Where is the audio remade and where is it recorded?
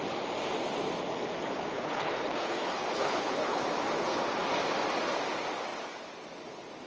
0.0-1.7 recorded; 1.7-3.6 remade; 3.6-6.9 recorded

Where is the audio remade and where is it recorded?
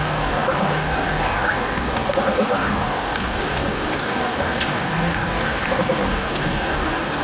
0.0-7.2 remade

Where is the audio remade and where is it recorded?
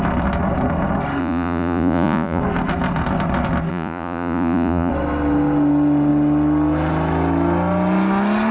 0.0-1.2 recorded; 1.2-2.4 remade; 2.4-3.7 recorded; 3.7-4.9 remade; 4.9-8.5 recorded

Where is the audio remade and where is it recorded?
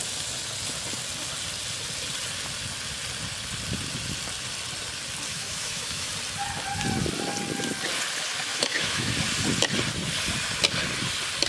0.0-5.3 recorded; 5.3-6.1 remade; 6.1-8.5 recorded; 8.5-9.1 remade; 9.1-11.5 recorded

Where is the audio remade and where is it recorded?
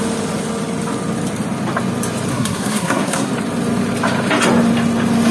0.0-2.3 recorded; 2.3-3.3 remade; 3.3-5.3 recorded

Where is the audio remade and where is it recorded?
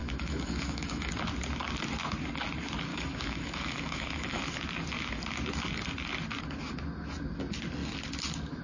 0.0-1.1 remade; 1.1-2.9 recorded; 2.9-4.4 remade; 4.4-8.6 recorded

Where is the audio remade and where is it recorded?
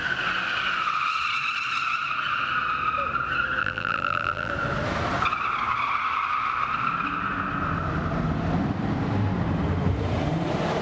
0.0-3.6 recorded; 3.6-4.5 remade; 4.5-10.8 recorded